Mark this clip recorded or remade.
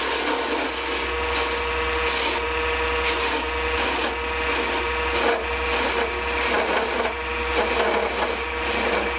recorded